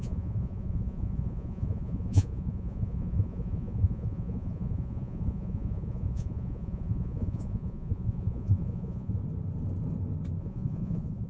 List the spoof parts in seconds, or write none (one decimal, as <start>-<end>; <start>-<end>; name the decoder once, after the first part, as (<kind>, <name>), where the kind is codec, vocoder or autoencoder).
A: 0.0-9.2 (vocoder, Vocos); 10.4-11.3